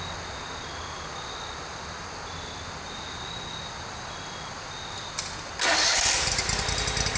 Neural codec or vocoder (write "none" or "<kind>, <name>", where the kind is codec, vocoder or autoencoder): none